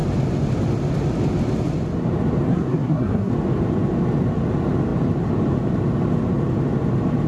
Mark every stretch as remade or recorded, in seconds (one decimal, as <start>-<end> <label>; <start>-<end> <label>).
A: 0.0-2.5 recorded; 2.5-3.3 remade; 3.3-7.3 recorded